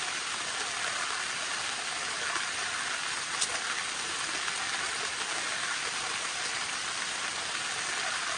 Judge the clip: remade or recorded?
recorded